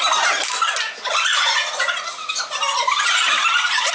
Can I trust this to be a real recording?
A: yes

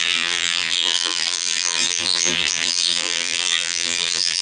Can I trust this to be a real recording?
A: no